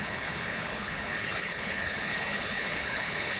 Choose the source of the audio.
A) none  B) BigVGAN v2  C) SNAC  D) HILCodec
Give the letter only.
D